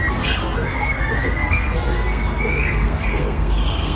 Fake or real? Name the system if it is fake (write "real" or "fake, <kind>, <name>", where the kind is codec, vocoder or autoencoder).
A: fake, codec, SNAC